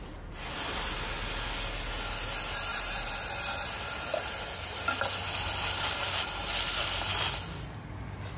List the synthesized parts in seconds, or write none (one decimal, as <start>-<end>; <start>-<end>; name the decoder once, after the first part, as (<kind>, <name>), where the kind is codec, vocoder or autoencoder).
2.7-3.3 (vocoder, BigVGAN v2)